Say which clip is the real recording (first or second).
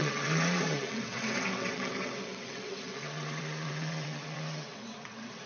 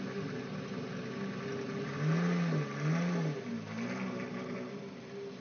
second